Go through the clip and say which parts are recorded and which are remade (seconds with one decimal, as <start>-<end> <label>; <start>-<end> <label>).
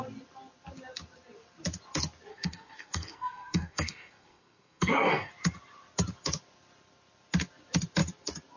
0.0-2.3 recorded; 2.3-5.3 remade; 5.3-8.6 recorded